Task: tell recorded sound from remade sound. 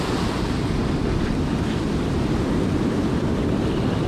recorded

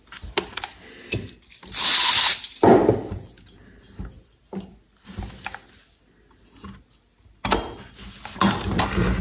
recorded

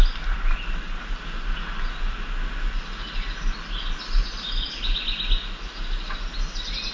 recorded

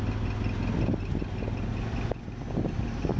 recorded